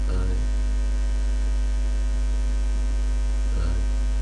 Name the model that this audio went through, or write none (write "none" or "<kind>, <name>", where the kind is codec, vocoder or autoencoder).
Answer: none